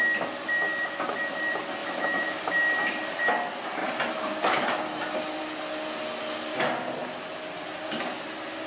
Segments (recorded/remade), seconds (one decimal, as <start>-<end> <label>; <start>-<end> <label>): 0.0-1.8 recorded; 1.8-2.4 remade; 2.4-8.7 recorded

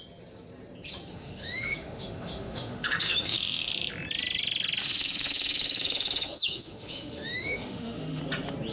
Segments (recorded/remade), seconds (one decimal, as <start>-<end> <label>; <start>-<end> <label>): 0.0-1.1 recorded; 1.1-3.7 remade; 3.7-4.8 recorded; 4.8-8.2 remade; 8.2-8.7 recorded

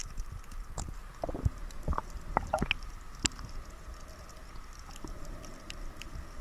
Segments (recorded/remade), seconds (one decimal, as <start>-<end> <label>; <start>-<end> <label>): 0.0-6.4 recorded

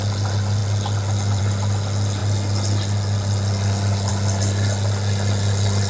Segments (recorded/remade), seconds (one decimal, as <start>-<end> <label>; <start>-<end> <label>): 0.0-5.9 recorded

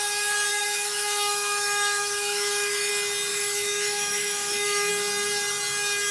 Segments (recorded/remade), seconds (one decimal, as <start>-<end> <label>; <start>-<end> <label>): 0.0-0.5 recorded; 0.5-2.9 remade; 2.9-3.3 recorded; 3.3-4.9 remade; 4.9-6.1 recorded